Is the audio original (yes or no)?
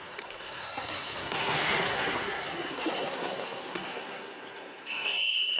no